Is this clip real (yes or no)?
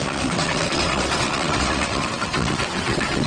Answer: no